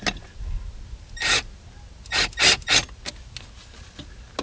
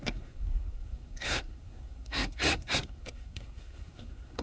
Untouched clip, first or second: first